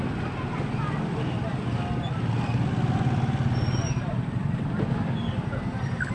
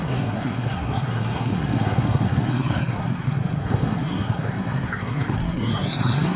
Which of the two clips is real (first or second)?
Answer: first